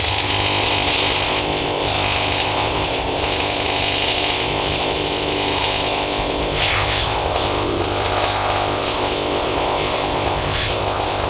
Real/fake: fake